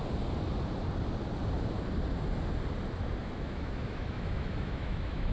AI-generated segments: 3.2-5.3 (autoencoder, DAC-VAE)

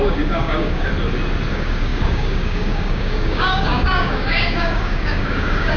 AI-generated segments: 0.0-0.9 (codec, DAC); 1.5-5.8

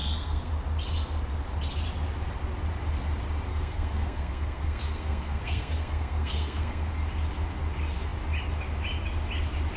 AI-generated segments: 0.0-0.5 (codec, SNAC); 3.5-6.9

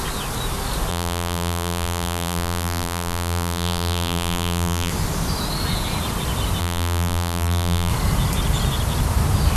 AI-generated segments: 0.9-4.9 (vocoder, BigVGAN v2); 6.6-7.9

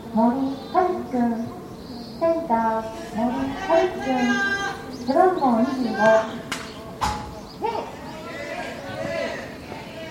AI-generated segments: none

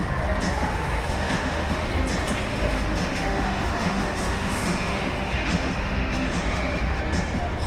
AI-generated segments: 0.7-1.9 (autoencoder, DAC-VAE); 2.5-7.0

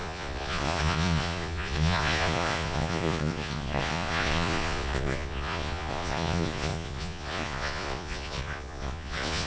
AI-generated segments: 0.0-9.5 (vocoder, Vocos)